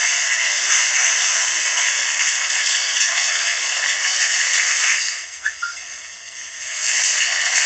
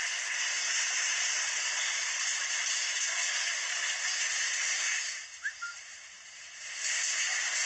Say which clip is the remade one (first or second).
first